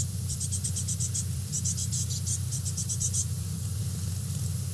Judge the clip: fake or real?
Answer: fake